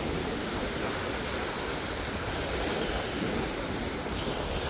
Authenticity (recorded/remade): remade